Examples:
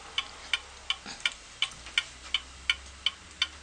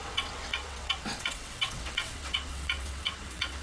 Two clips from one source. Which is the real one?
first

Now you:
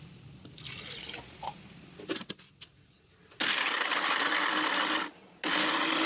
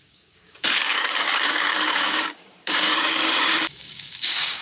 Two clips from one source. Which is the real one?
first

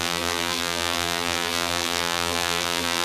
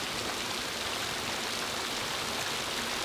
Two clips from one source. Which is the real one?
second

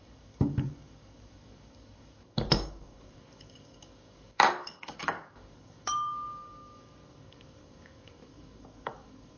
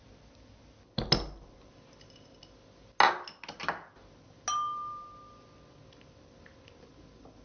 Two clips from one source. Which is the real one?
second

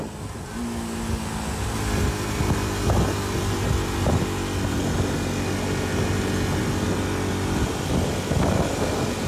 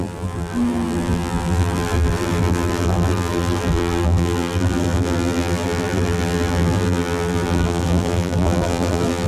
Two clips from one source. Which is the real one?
first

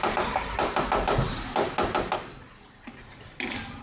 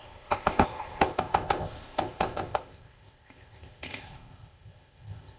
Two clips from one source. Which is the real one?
first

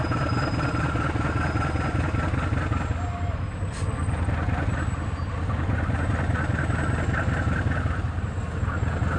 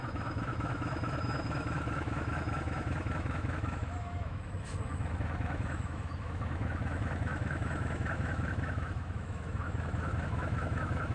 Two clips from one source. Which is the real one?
first